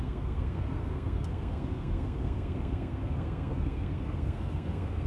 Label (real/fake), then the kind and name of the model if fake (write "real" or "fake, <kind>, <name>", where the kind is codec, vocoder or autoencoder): fake, codec, SNAC